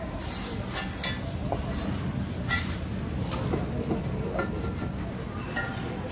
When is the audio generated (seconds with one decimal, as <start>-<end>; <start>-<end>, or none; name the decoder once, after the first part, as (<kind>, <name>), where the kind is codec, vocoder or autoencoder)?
none